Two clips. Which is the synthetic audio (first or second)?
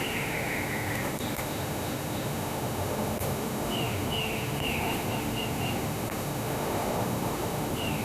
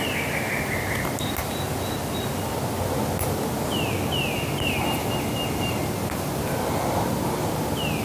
first